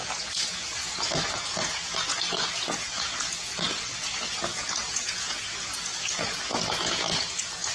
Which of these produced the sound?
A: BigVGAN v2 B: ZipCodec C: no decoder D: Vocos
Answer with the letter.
D